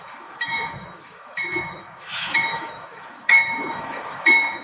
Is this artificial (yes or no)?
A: yes